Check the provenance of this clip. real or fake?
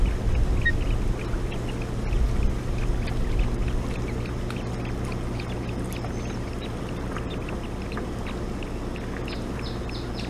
real